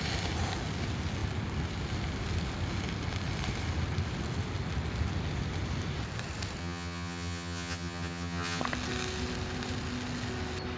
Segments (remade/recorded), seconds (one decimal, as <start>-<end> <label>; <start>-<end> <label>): 0.0-6.6 recorded; 6.6-8.6 remade; 8.6-10.8 recorded